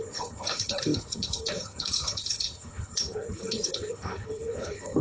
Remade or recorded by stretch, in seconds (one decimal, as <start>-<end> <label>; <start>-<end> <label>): 0.0-5.0 remade